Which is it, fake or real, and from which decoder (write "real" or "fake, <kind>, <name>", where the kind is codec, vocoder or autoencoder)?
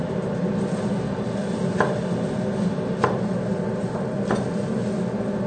real